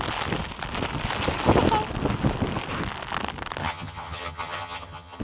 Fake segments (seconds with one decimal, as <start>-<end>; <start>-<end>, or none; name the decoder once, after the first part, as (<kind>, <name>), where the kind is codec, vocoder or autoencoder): 3.6-5.2 (vocoder, HiFi-GAN)